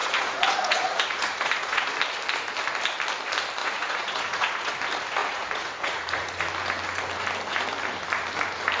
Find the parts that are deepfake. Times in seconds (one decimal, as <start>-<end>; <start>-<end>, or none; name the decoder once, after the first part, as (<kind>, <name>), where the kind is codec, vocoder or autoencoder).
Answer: 0.0-1.9 (vocoder, Vocos); 3.6-4.7; 5.2-6.3